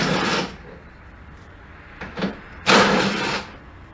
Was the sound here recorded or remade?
remade